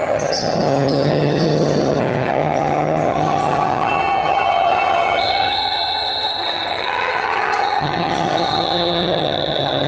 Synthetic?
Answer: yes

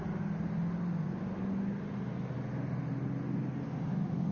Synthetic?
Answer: no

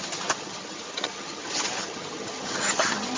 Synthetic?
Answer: yes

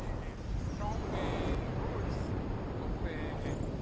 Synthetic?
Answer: no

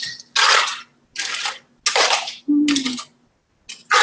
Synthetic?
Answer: no